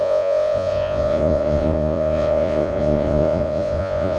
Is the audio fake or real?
fake